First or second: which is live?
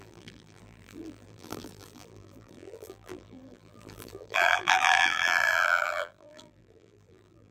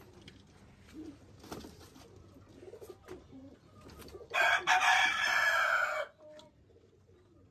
second